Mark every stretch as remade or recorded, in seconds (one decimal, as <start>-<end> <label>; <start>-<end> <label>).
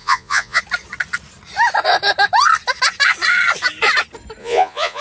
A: 0.0-0.6 remade; 0.6-4.4 recorded; 4.4-5.0 remade